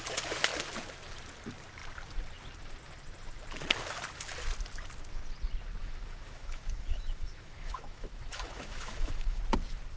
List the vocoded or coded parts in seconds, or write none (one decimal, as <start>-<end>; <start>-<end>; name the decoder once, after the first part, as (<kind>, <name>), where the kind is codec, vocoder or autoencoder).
5.8-9.4 (autoencoder, DAC-VAE)